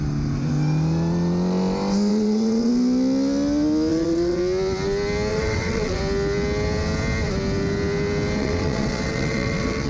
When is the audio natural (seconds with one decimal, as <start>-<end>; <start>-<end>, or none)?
0.0-2.1; 2.7-3.9; 4.4-5.3; 6.0-8.4